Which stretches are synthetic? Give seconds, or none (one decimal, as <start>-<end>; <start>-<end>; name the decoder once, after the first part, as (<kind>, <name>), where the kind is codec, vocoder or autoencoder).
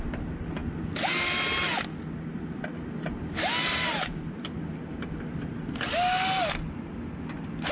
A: none